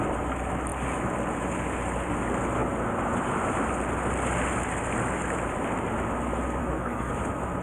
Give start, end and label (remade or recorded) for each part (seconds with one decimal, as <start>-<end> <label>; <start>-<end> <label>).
0.0-6.6 recorded; 6.6-7.1 remade; 7.1-7.6 recorded